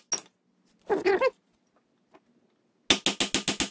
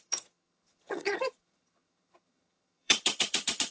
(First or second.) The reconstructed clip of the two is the second